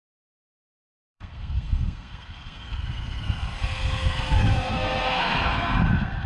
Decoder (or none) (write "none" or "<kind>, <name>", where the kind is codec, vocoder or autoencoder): codec, SNAC